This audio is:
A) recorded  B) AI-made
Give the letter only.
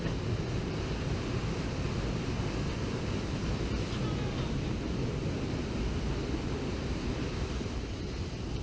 A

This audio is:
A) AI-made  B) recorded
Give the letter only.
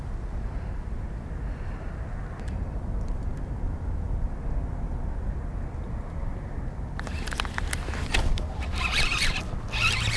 B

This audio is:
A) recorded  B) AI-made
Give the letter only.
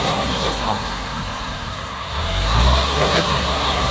B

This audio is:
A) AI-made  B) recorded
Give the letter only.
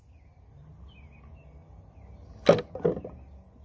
B